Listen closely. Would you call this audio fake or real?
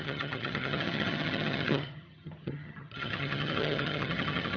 fake